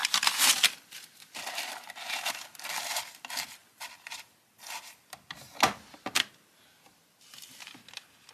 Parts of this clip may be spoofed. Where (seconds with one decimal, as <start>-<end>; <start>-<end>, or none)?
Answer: 0.0-1.7